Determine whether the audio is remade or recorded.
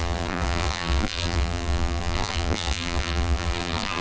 remade